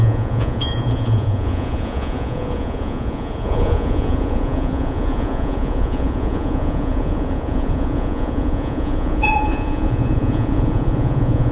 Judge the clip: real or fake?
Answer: fake